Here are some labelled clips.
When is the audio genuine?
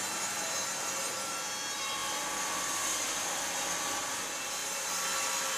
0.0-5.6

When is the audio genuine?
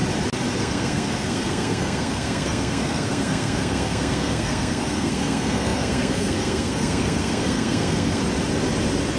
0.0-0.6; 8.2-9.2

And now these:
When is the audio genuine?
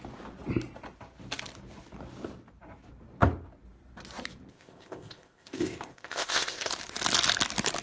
0.0-4.5; 6.7-7.8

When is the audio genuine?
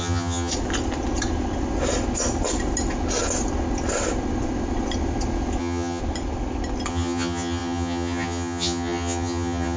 0.5-5.6; 6.0-6.9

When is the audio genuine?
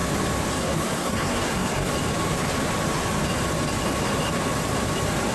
0.0-0.5; 1.9-5.3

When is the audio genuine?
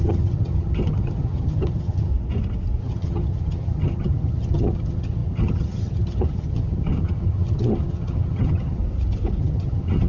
2.1-2.8; 8.8-9.4